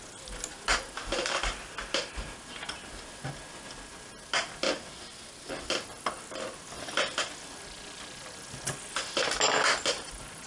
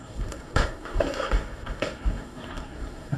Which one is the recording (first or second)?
first